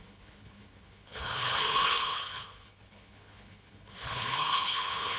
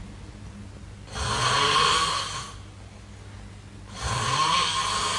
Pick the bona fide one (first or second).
second